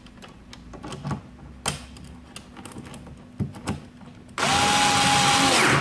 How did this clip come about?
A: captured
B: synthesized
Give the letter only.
A